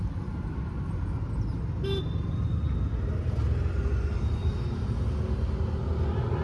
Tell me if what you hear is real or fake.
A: real